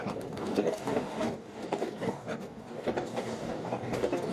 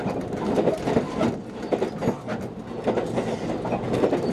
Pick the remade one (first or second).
first